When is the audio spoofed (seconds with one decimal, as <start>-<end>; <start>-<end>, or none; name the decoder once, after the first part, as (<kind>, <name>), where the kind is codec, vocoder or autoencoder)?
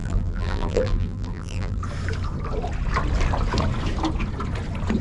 0.0-1.8 (vocoder, BigVGAN v2)